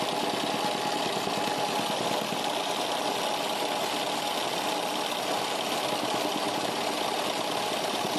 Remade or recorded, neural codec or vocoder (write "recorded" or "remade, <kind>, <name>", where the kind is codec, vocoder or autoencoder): recorded